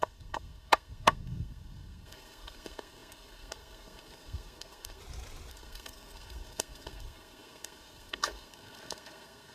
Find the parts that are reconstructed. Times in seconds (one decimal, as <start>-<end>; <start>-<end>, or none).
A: 0.0-5.0; 5.5-9.5